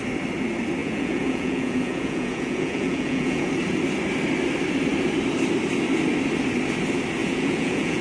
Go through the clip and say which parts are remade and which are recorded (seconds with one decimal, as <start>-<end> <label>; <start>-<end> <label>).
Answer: 0.0-0.8 recorded; 0.8-3.5 remade; 3.5-7.2 recorded; 7.2-8.0 remade